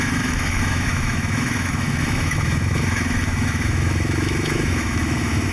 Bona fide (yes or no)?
no